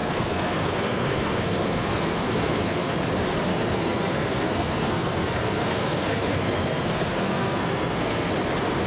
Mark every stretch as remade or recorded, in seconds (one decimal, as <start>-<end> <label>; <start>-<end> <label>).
0.0-3.0 remade; 3.0-3.5 recorded; 3.5-8.3 remade; 8.3-8.9 recorded

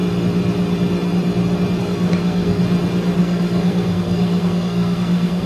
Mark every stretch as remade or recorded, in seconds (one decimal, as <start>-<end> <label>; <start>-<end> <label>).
0.0-1.8 recorded; 1.8-2.6 remade; 2.6-3.2 recorded; 3.2-5.5 remade